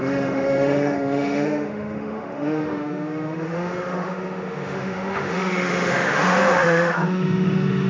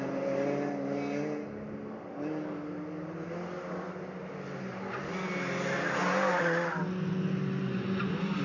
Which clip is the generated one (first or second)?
first